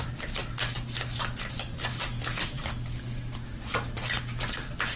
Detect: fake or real real